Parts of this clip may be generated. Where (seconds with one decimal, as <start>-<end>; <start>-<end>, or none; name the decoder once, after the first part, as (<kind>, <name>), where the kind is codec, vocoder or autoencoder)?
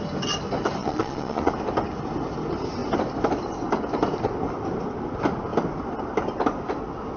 0.8-1.5 (vocoder, Vocos)